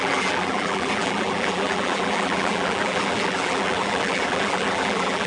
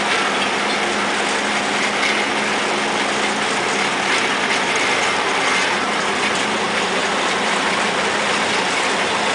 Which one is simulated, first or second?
first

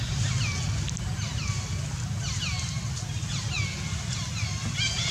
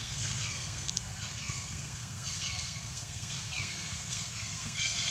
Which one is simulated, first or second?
second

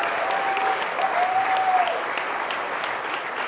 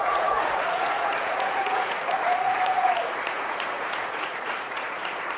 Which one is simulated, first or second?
second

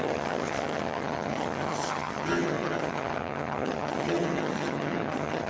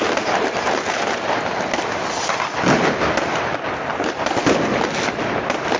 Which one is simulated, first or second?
first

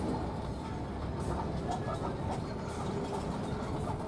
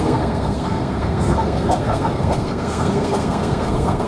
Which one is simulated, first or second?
second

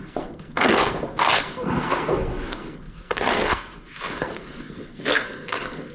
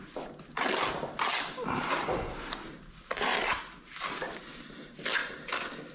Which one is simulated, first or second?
first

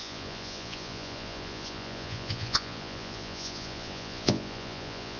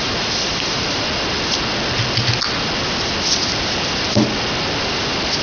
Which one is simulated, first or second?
first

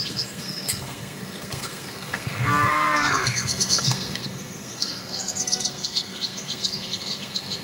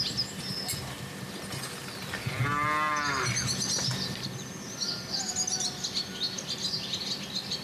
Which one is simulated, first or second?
first